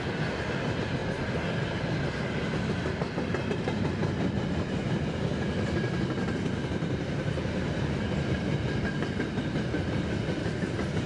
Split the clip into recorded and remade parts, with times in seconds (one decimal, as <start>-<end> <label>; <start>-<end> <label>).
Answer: 0.0-11.1 recorded

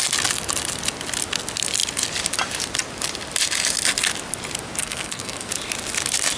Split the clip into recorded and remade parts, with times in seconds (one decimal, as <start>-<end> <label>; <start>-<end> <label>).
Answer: 0.0-4.8 recorded; 4.8-5.5 remade; 5.5-6.4 recorded

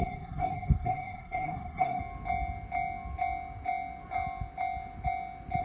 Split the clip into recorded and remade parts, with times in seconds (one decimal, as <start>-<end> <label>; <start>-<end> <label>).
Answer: 0.0-2.0 remade; 2.0-5.6 recorded

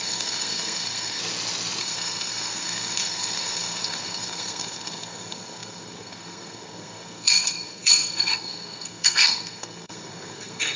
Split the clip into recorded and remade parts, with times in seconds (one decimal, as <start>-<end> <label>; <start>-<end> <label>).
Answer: 0.0-1.2 remade; 1.2-1.8 recorded; 1.8-10.8 remade

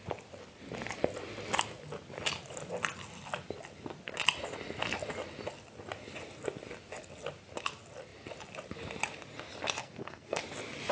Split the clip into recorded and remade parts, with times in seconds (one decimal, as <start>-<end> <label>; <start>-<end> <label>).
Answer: 0.0-9.8 recorded; 9.8-10.4 remade; 10.4-10.9 recorded

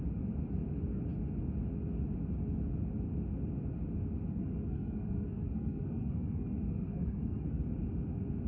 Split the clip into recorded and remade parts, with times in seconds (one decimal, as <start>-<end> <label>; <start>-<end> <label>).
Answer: 0.0-4.3 recorded; 4.3-7.6 remade; 7.6-8.5 recorded

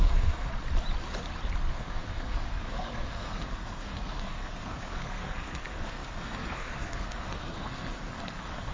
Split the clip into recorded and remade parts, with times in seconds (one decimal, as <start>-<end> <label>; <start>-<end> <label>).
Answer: 0.0-0.5 remade; 0.5-1.7 recorded; 1.7-8.7 remade